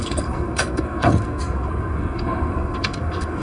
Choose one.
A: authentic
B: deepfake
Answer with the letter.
B